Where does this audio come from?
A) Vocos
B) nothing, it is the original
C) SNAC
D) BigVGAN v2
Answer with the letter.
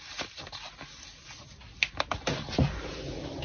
B